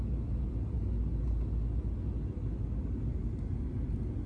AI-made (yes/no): no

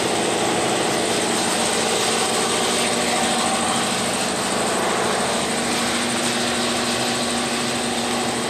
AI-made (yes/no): no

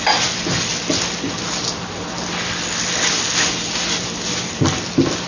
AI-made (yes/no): no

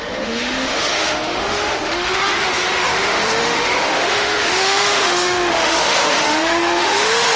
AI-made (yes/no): yes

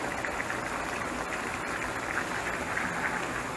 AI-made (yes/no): no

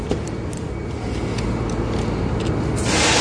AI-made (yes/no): no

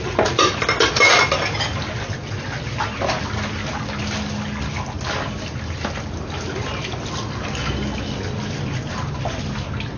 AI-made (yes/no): no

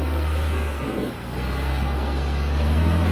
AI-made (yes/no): yes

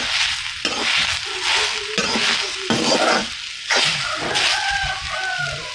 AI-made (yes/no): no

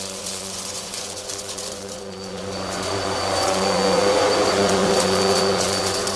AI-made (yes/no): yes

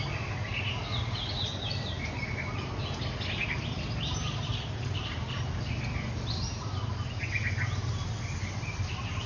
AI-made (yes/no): no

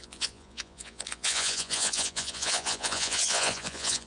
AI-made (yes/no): yes